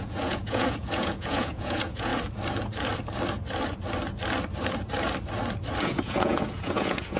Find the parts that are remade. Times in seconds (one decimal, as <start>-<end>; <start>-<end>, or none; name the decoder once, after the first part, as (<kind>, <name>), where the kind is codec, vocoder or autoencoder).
0.0-2.1 (vocoder, Vocos); 5.8-7.2